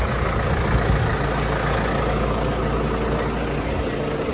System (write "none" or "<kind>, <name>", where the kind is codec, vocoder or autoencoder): none